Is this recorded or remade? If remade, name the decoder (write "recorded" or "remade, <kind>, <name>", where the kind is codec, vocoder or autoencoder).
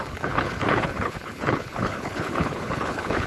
remade, codec, HILCodec